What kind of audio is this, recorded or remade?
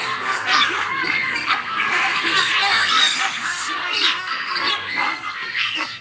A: remade